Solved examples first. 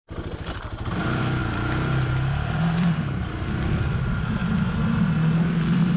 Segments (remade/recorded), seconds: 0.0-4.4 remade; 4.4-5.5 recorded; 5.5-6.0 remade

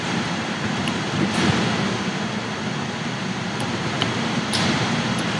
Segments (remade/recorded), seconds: 0.0-2.1 remade; 2.1-3.2 recorded; 3.2-5.4 remade

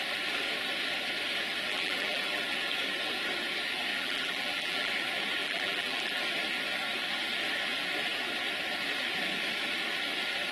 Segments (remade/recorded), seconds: 0.0-1.7 recorded; 1.7-2.4 remade; 2.4-3.9 recorded; 3.9-4.9 remade; 4.9-5.4 recorded; 5.4-6.2 remade; 6.2-10.5 recorded

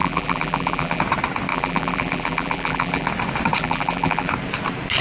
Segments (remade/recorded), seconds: 0.0-1.0 remade; 1.0-1.5 recorded; 1.5-3.1 remade; 3.1-3.6 recorded; 3.6-4.3 remade; 4.3-5.0 recorded